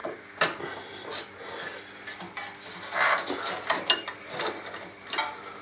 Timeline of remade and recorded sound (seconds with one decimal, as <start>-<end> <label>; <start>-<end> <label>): 0.0-5.6 recorded

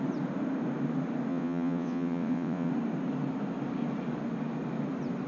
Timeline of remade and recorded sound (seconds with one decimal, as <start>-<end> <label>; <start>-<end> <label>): 0.0-1.3 recorded; 1.3-2.7 remade; 2.7-5.3 recorded

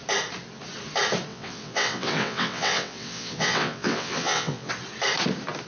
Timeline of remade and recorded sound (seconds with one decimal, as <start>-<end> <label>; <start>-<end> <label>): 0.0-1.3 recorded; 1.3-4.7 remade; 4.7-5.7 recorded

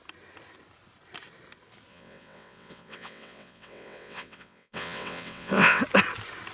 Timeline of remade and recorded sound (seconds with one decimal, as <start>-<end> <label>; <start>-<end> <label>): 0.0-1.9 recorded; 1.9-5.8 remade; 5.8-6.5 recorded

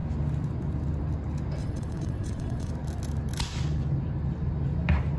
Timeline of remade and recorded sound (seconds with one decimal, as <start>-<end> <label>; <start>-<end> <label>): 0.0-1.6 recorded; 1.6-2.7 remade; 2.7-5.2 recorded

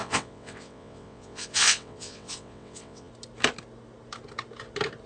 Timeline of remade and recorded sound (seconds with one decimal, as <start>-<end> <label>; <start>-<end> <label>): 0.0-3.1 remade; 3.1-5.1 recorded

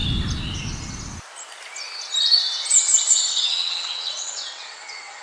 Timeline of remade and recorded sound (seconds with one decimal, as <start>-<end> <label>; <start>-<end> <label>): 0.0-3.1 recorded; 3.1-5.2 remade